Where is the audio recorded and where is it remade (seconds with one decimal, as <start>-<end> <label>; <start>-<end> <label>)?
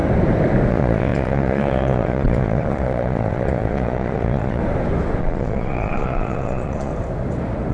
0.0-0.7 recorded; 0.7-4.6 remade; 4.6-5.2 recorded; 5.2-6.9 remade; 6.9-7.7 recorded